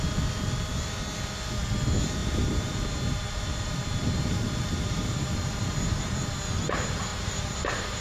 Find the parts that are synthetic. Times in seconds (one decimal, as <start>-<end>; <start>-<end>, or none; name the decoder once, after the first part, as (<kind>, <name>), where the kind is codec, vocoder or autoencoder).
2.2-6.3 (vocoder, BigVGAN v2); 7.1-8.0